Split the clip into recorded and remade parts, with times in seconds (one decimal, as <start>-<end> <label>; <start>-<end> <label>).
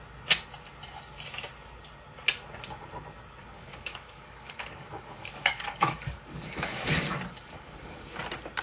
0.0-3.4 recorded; 3.4-8.2 remade; 8.2-8.6 recorded